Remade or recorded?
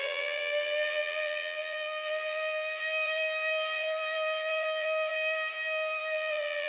remade